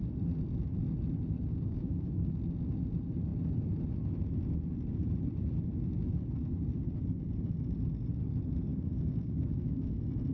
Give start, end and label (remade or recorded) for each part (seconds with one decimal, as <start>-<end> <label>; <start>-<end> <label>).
0.0-1.5 recorded; 1.5-2.3 remade; 2.3-8.7 recorded; 8.7-9.9 remade; 9.9-10.3 recorded